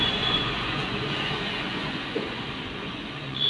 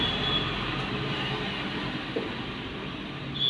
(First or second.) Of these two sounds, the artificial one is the first